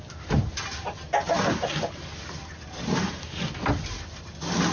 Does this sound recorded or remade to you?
recorded